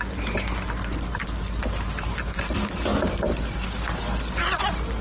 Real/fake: real